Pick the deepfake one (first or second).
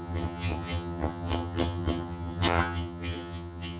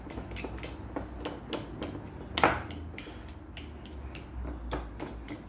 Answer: first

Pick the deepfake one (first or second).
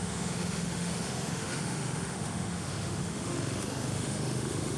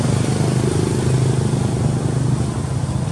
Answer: first